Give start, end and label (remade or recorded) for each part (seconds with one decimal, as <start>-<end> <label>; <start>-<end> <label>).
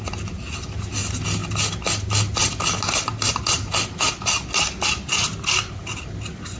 0.0-6.6 recorded